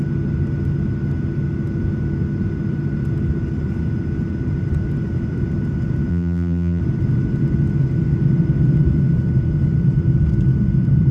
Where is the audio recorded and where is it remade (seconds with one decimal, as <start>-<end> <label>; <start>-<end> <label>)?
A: 0.0-6.1 recorded; 6.1-6.8 remade; 6.8-11.1 recorded